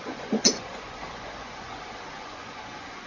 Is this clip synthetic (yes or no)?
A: yes